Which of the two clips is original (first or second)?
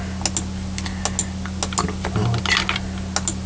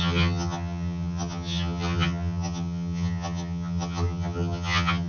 first